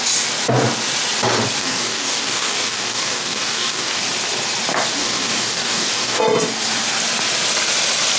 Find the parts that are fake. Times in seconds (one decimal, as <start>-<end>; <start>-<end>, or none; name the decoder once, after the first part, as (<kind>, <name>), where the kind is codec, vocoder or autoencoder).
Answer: 1.6-4.0 (codec, DAC); 5.0-6.2